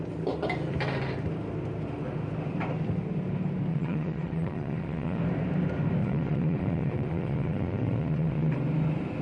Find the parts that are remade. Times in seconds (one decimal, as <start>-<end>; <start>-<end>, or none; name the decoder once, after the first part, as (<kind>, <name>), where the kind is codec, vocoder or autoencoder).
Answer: 3.7-5.2 (vocoder, Vocos); 6.0-8.5